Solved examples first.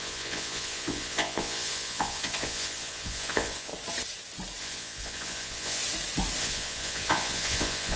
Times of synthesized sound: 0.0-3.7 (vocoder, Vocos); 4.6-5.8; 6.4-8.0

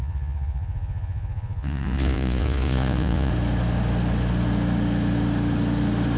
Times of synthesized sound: 0.0-3.3 (vocoder, Vocos)

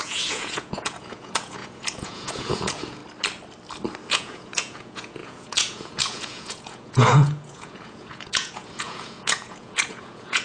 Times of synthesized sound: 0.0-3.0 (vocoder, Vocos); 4.1-10.4

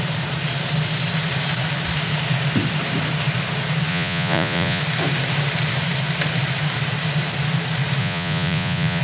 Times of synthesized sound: 3.9-4.8 (vocoder, Vocos); 8.0-9.0

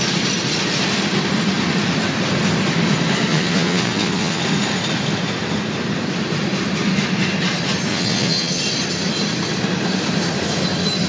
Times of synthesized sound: 3.3-4.4 (vocoder, Vocos); 7.9-8.6

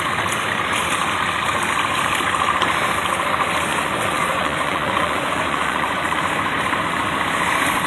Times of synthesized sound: 3.7-6.2 (vocoder, Vocos)

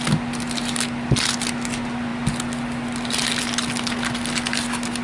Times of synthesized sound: none

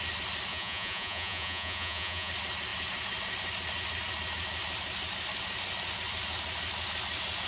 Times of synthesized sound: 0.5-2.3 (vocoder, Vocos)